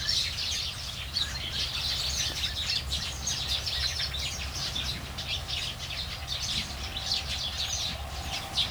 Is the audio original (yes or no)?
yes